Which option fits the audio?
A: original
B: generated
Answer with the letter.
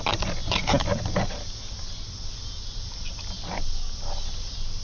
A